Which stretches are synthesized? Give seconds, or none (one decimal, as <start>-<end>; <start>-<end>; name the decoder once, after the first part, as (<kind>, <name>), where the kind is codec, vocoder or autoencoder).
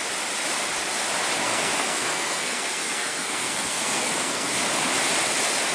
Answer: 1.4-4.5 (codec, SNAC)